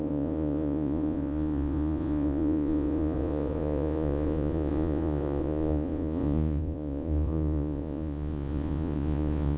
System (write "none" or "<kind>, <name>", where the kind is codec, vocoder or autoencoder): vocoder, Vocos